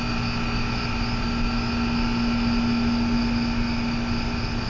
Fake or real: real